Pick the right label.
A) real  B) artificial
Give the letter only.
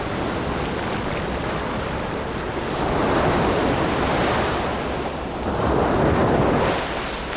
A